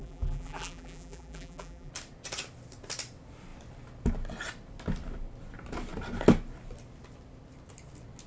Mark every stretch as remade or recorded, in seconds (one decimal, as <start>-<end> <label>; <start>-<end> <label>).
0.0-1.9 remade; 1.9-8.3 recorded